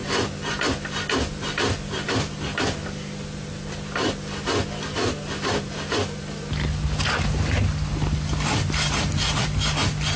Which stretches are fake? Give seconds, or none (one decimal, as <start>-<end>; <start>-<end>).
none